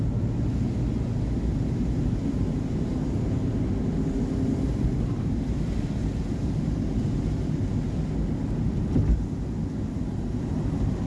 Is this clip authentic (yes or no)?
yes